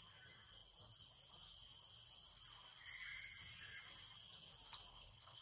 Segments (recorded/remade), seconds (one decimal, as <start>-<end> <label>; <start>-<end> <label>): 0.0-4.9 recorded; 4.9-5.4 remade